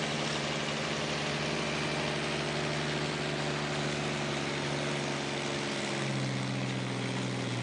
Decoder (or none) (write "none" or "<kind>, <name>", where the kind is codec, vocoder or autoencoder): none